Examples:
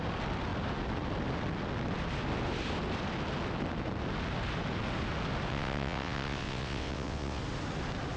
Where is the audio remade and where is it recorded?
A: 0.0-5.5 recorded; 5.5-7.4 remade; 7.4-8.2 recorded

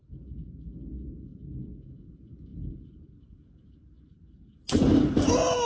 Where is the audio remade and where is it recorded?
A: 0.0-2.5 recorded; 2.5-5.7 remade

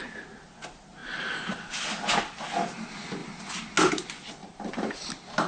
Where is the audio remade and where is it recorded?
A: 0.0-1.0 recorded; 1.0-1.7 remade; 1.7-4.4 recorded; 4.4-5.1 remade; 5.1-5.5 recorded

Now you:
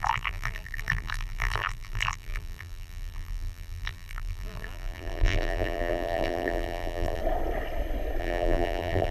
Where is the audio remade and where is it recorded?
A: 0.0-7.2 remade; 7.2-8.2 recorded; 8.2-9.1 remade

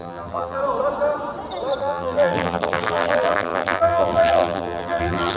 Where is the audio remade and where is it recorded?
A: 0.0-0.6 remade; 0.6-1.8 recorded; 1.8-5.4 remade